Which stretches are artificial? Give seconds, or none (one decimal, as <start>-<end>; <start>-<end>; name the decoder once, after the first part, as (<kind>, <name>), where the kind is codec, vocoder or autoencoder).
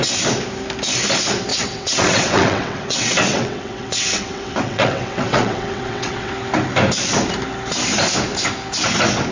1.5-6.3 (vocoder, WaveNeXt)